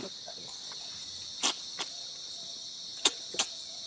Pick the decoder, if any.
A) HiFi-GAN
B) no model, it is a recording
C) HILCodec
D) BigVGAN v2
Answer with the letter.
B